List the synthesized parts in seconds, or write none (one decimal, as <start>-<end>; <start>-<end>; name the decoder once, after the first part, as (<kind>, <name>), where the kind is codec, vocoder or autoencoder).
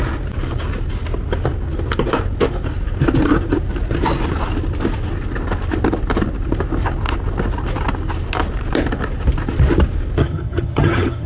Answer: 10.2-11.3 (vocoder, HiFi-GAN)